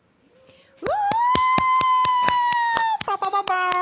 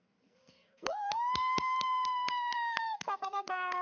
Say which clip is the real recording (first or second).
first